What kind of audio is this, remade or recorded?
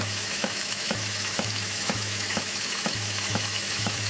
remade